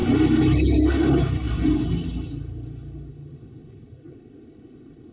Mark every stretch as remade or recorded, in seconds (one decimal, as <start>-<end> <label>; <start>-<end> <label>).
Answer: 0.0-5.1 recorded